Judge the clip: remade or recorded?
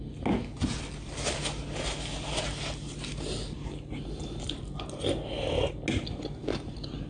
recorded